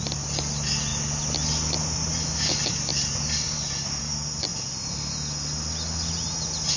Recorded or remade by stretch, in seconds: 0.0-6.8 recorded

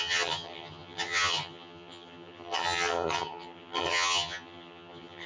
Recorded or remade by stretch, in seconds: 0.0-5.3 remade

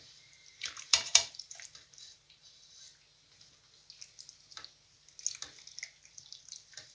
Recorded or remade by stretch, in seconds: 0.0-2.9 remade; 2.9-6.1 recorded; 6.1-6.9 remade

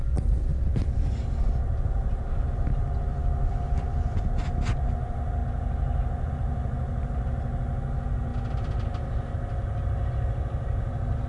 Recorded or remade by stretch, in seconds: 0.0-11.3 recorded